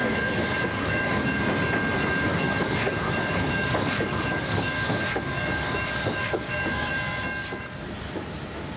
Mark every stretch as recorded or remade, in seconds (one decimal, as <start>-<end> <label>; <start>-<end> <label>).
0.0-1.4 remade; 1.4-2.3 recorded; 2.3-6.9 remade; 6.9-8.8 recorded

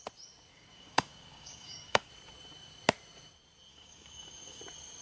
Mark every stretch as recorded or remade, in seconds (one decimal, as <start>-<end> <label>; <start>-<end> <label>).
0.0-0.5 recorded; 0.5-2.1 remade; 2.1-3.7 recorded; 3.7-4.6 remade; 4.6-5.0 recorded

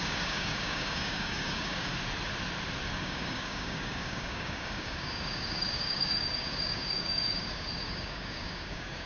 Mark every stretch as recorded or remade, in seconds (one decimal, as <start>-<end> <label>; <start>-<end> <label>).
0.0-1.9 remade; 1.9-2.9 recorded; 2.9-9.1 remade

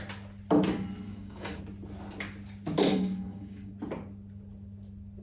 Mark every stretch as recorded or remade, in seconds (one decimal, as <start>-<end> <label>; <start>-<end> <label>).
0.0-1.1 recorded; 1.1-1.6 remade; 1.6-2.9 recorded; 2.9-3.7 remade; 3.7-5.2 recorded